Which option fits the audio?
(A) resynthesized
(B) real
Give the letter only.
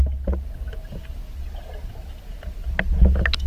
B